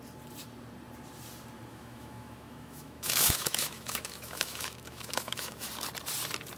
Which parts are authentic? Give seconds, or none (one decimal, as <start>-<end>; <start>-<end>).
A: 0.0-1.7; 5.7-6.6